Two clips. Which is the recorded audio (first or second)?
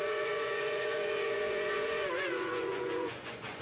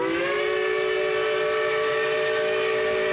second